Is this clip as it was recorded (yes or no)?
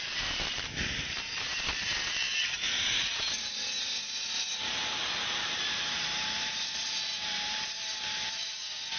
no